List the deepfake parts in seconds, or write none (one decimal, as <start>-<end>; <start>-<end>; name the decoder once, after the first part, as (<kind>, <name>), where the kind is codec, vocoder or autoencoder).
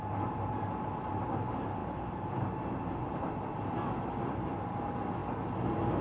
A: 1.8-3.0 (vocoder, BigVGAN v2)